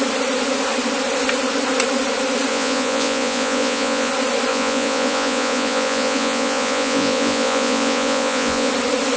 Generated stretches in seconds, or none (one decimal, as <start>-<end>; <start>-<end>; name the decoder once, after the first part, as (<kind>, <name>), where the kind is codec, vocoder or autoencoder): 2.5-4.1 (vocoder, Vocos); 4.5-8.7